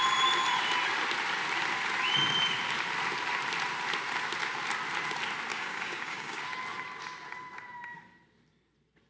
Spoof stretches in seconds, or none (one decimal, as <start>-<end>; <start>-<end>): 5.5-6.4